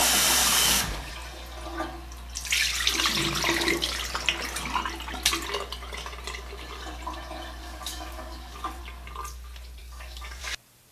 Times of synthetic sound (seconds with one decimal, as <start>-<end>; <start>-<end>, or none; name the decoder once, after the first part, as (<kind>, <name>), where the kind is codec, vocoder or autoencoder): 0.4-1.1 (codec, DAC); 7.6-8.8; 9.8-10.4